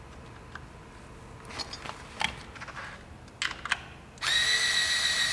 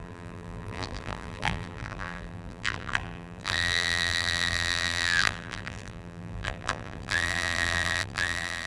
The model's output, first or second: second